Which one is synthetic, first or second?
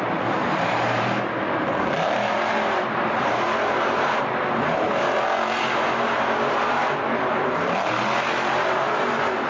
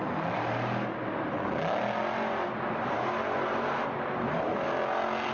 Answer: first